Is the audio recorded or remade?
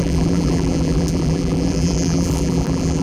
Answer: remade